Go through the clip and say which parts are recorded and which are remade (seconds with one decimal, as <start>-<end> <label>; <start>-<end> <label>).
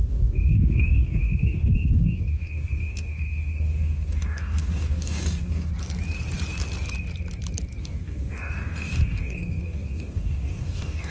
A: 0.0-5.7 remade; 5.7-7.8 recorded; 7.8-11.1 remade